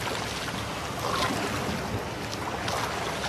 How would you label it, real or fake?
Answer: real